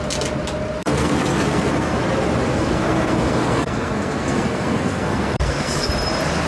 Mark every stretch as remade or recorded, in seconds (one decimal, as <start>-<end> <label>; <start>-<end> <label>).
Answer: 0.0-0.8 recorded; 0.8-2.0 remade; 2.0-2.5 recorded; 2.5-5.9 remade; 5.9-6.5 recorded